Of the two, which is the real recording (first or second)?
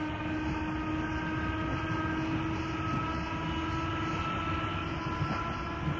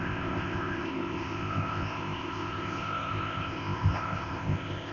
first